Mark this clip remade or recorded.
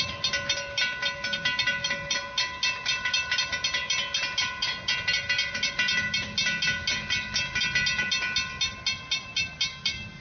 recorded